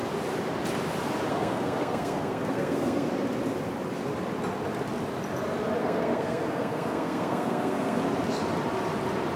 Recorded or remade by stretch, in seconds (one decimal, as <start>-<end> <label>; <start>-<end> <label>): 0.0-1.3 recorded; 1.3-3.1 remade; 3.1-5.8 recorded; 5.8-8.0 remade; 8.0-9.4 recorded

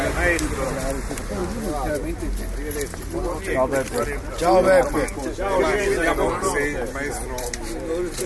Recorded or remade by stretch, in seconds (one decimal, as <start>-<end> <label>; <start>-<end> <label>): 0.0-8.3 recorded

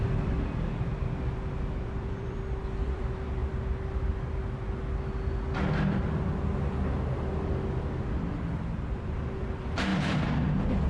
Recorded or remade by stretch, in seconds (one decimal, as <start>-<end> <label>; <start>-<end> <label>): 0.0-3.4 remade; 3.4-8.1 recorded; 8.1-10.9 remade

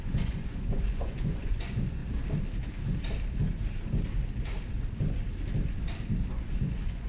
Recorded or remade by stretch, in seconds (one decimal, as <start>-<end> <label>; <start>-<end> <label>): 0.0-2.0 remade; 2.0-6.3 recorded; 6.3-7.1 remade

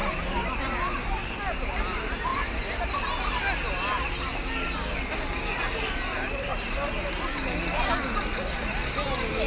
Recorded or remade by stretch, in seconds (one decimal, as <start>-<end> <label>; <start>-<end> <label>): 0.0-9.5 recorded

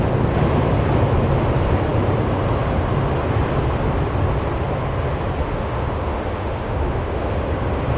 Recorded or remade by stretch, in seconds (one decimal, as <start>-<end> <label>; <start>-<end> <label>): 0.0-5.4 recorded; 5.4-7.5 remade; 7.5-8.0 recorded

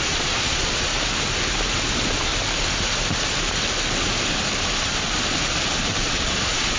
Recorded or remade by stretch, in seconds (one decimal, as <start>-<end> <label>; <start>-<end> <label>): 0.0-0.9 remade; 0.9-1.9 recorded; 1.9-2.3 remade; 2.3-6.0 recorded; 6.0-6.8 remade

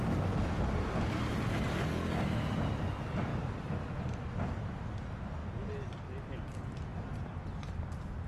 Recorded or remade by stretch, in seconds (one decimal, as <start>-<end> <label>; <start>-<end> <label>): 0.0-3.3 recorded; 3.3-4.0 remade; 4.0-8.3 recorded